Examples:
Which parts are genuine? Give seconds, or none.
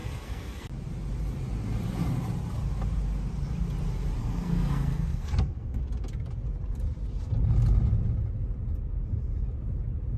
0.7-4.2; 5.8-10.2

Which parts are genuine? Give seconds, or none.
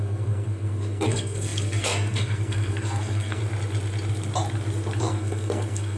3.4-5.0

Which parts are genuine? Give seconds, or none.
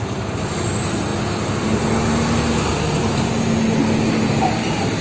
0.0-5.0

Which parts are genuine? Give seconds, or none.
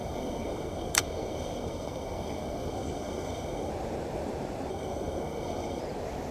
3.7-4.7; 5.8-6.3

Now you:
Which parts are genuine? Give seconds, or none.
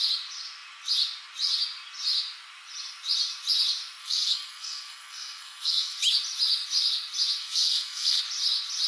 0.0-4.0; 6.0-7.4; 8.2-8.9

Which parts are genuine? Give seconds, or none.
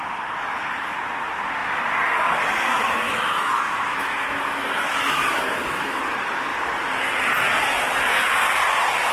0.0-2.7; 6.0-9.1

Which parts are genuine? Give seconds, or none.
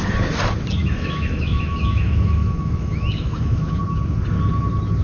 0.0-0.8; 3.8-5.0